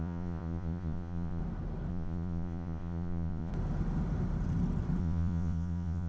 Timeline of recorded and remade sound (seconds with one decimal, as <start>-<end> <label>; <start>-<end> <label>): 0.0-1.4 remade; 1.4-1.9 recorded; 1.9-3.5 remade; 3.5-5.0 recorded; 5.0-6.1 remade